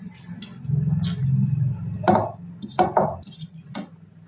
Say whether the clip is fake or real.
real